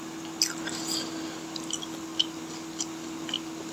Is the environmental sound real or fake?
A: real